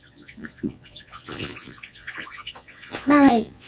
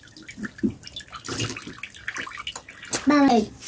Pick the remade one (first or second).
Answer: first